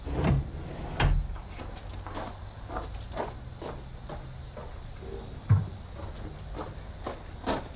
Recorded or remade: recorded